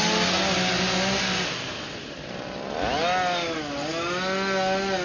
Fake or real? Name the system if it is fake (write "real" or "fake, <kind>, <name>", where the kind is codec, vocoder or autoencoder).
real